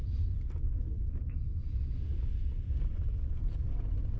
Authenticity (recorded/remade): recorded